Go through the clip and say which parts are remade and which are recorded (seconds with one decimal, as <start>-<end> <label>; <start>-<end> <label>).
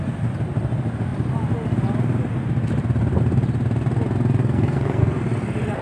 0.0-4.4 recorded; 4.4-5.0 remade; 5.0-5.8 recorded